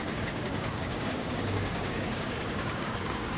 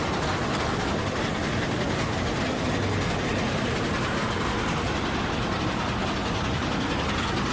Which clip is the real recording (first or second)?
second